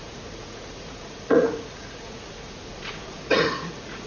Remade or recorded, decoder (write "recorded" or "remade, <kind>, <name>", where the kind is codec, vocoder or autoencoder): remade, vocoder, Vocos